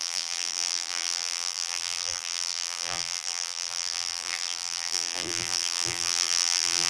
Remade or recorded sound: remade